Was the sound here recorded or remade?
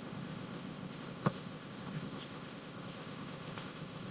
remade